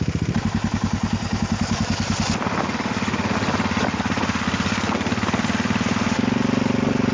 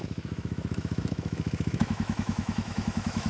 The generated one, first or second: second